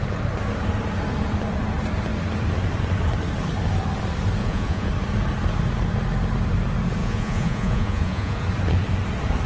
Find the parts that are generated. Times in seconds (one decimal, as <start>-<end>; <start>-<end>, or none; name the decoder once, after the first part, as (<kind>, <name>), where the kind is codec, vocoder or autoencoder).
4.4-4.9 (vocoder, Vocos); 7.0-8.4